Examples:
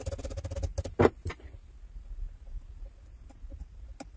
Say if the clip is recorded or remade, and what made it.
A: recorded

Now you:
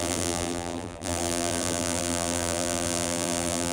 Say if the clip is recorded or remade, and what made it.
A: remade, vocoder, BigVGAN v2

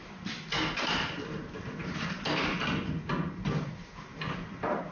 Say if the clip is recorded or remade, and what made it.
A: remade, vocoder, BigVGAN v2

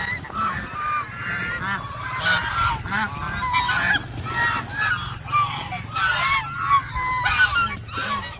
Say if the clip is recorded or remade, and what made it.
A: recorded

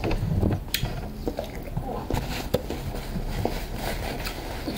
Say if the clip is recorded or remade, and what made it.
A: recorded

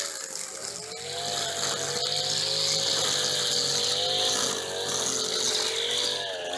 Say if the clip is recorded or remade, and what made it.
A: recorded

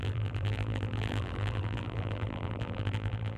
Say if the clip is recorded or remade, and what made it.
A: remade, vocoder, BigVGAN v2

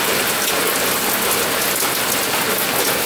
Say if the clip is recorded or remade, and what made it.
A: recorded